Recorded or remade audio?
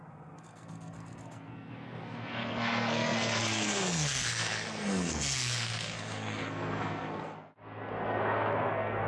remade